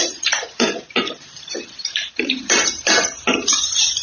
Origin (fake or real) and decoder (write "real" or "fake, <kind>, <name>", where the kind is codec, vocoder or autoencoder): fake, vocoder, BigVGAN v2